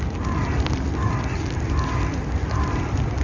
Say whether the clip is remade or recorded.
recorded